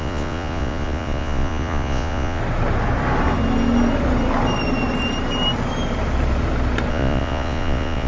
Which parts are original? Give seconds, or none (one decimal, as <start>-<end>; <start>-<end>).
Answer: 2.4-6.9